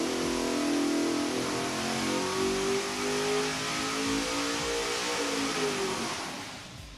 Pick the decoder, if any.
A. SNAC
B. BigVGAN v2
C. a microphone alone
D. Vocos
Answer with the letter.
C